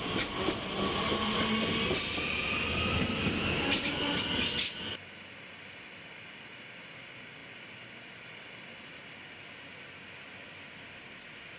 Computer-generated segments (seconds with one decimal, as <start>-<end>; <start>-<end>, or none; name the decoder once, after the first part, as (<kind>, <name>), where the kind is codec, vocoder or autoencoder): none